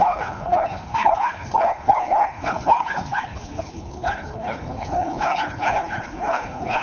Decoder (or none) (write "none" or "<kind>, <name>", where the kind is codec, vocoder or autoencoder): codec, HILCodec